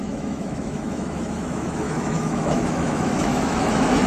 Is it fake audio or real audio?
fake